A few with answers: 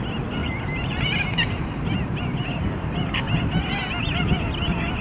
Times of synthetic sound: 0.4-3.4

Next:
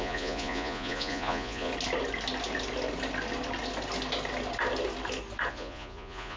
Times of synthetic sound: 0.0-1.7; 5.5-6.4